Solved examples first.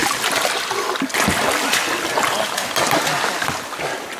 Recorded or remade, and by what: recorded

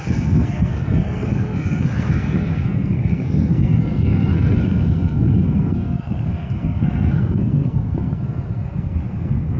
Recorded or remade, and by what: remade, codec, SNAC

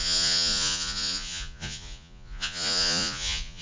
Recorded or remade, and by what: remade, vocoder, Vocos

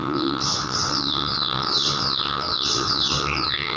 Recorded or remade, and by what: remade, vocoder, WaveNeXt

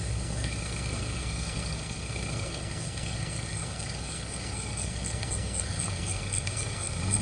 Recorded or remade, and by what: remade, codec, SNAC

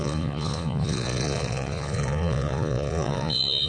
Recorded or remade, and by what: remade, vocoder, Vocos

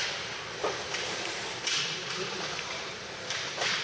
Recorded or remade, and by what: remade, vocoder, BigVGAN v2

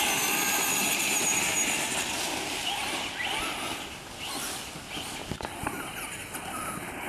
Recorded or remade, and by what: recorded